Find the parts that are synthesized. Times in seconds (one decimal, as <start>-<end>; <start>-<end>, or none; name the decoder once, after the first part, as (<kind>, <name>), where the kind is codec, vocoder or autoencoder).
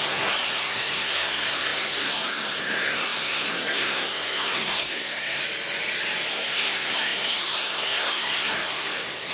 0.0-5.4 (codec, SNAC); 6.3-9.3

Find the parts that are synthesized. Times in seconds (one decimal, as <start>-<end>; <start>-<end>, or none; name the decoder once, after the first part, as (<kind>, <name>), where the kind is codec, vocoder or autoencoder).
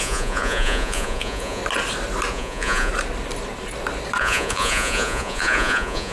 0.0-1.6 (vocoder, Vocos); 2.3-2.9; 4.2-6.1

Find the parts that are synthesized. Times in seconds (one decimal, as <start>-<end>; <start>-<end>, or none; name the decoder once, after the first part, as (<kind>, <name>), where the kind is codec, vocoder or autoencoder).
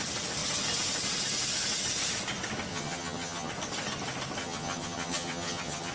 2.7-3.5 (vocoder, HiFi-GAN); 4.4-5.9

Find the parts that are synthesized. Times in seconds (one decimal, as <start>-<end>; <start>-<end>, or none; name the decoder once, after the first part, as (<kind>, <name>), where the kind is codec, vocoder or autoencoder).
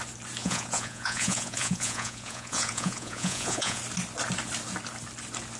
0.4-3.8 (vocoder, Vocos)